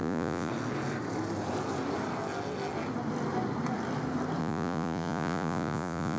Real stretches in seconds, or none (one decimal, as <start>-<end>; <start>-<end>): 0.5-4.4

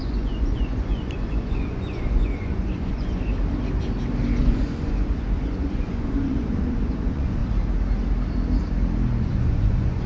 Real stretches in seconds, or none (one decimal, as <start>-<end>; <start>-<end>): 3.3-4.4; 7.4-9.2